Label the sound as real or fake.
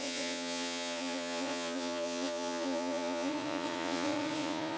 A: fake